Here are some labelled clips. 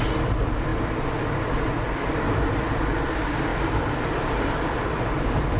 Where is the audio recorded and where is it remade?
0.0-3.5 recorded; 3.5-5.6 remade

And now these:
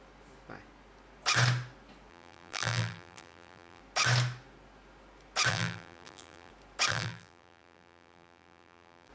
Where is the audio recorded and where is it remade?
0.0-2.1 recorded; 2.1-3.8 remade; 3.8-5.5 recorded; 5.5-6.5 remade; 6.5-6.9 recorded; 6.9-9.1 remade

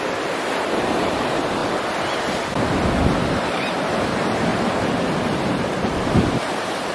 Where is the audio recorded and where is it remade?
0.0-1.6 remade; 1.6-3.3 recorded; 3.3-6.9 remade

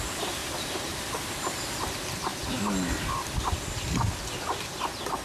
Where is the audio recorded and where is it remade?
0.0-0.4 recorded; 0.4-0.9 remade; 0.9-5.2 recorded

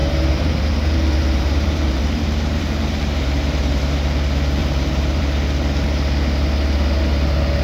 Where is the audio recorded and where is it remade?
0.0-3.8 remade; 3.8-4.6 recorded; 4.6-5.2 remade; 5.2-7.6 recorded

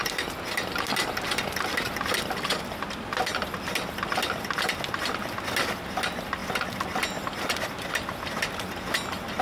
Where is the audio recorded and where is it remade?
0.0-9.4 recorded